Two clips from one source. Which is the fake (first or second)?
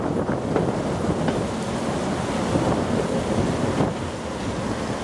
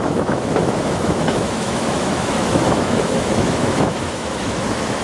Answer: second